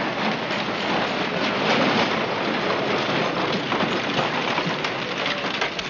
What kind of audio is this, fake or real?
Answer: real